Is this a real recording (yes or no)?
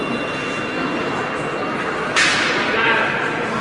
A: yes